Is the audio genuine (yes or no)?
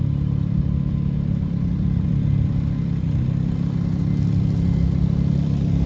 no